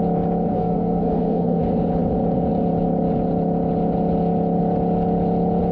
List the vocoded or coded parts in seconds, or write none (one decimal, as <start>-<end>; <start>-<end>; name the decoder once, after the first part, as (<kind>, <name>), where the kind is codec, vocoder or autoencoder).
0.5-1.6 (codec, SNAC)